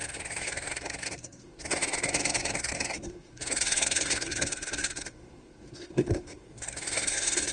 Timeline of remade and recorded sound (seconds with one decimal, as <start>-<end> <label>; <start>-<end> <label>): 0.0-7.5 remade